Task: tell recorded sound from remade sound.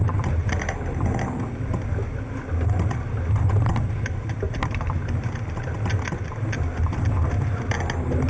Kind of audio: recorded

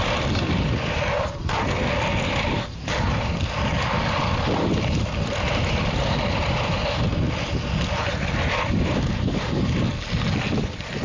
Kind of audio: recorded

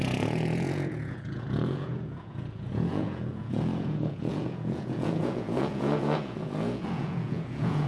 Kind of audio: remade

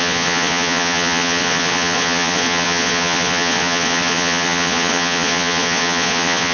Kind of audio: remade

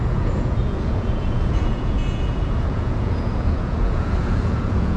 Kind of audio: remade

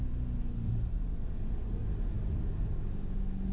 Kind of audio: recorded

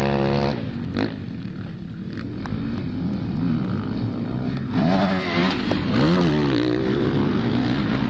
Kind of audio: recorded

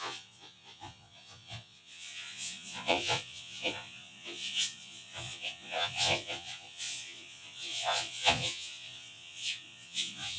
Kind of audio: remade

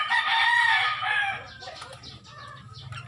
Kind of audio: recorded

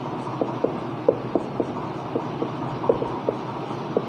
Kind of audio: recorded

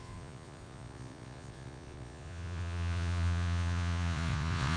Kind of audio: remade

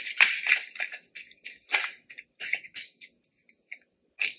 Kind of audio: recorded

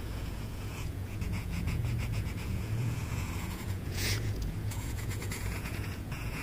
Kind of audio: remade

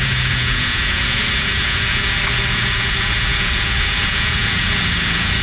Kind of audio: remade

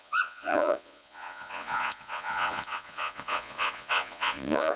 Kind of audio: remade